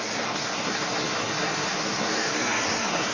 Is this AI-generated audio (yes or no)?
yes